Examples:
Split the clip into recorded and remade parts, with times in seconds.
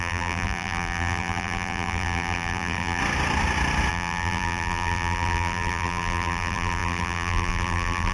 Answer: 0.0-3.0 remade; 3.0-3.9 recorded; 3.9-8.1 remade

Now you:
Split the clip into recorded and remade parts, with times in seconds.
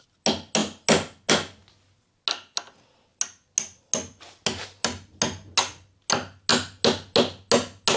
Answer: 0.0-8.0 recorded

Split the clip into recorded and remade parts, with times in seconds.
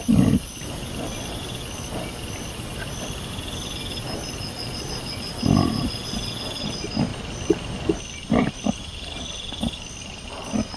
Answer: 0.0-7.1 recorded; 7.1-8.4 remade; 8.4-10.8 recorded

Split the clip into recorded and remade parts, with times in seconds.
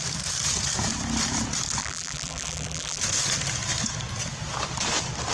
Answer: 0.0-1.8 recorded; 1.8-3.0 remade; 3.0-5.3 recorded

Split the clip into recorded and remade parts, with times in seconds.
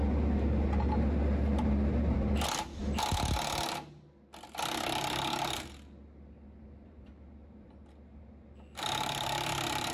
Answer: 0.0-9.9 recorded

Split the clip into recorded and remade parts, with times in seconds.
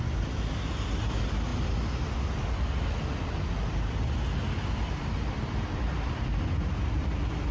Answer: 0.0-7.5 recorded